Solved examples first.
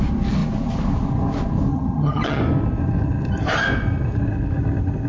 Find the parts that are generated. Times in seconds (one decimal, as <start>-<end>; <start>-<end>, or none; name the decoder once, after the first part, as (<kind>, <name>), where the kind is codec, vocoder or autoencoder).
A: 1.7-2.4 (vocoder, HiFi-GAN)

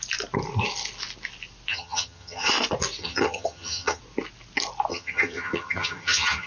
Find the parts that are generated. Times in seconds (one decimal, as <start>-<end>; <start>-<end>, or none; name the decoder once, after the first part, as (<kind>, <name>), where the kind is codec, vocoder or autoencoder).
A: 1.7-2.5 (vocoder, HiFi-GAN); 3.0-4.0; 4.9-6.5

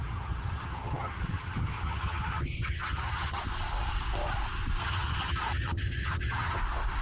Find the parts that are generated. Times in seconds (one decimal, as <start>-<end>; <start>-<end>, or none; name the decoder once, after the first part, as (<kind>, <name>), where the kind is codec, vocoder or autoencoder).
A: 0.0-3.4 (vocoder, HiFi-GAN); 4.8-6.6